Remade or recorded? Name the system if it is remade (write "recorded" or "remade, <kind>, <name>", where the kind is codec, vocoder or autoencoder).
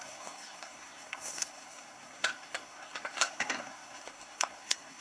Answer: remade, codec, SNAC